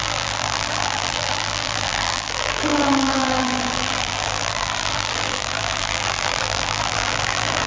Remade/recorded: remade